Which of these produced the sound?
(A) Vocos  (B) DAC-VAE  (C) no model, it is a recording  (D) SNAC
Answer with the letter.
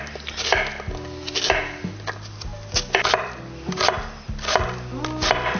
C